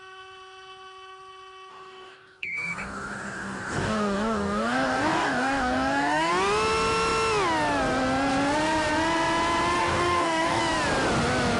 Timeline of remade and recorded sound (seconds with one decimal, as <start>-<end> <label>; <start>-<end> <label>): 0.0-1.7 recorded; 1.7-6.3 remade; 6.3-9.8 recorded; 9.8-10.6 remade; 10.6-11.6 recorded